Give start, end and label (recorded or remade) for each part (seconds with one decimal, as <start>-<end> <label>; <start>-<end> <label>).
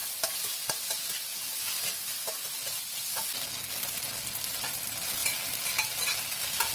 0.0-6.7 recorded